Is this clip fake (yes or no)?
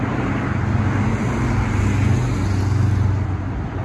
no